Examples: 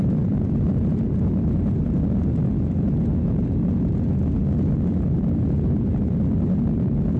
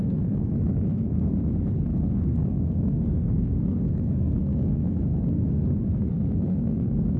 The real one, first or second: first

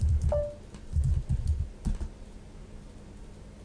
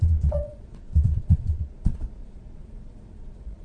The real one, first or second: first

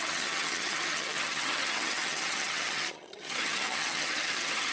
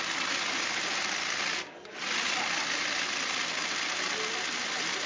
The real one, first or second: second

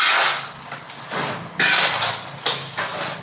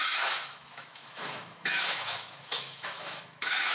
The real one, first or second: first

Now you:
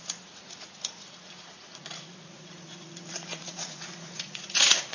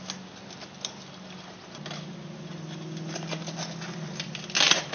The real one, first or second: second